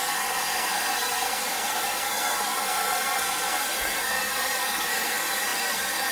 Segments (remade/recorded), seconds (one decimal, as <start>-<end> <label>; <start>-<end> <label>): 0.0-6.1 remade